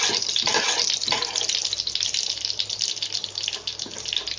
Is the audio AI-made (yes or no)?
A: no